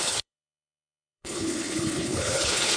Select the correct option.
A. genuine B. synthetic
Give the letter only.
B